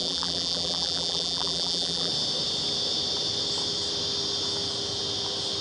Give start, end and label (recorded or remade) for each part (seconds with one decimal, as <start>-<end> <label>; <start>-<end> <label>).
0.0-2.1 remade; 2.1-5.6 recorded